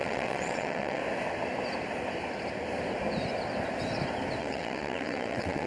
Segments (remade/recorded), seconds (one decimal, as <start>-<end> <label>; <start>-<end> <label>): 0.0-1.0 remade; 1.0-4.4 recorded; 4.4-5.7 remade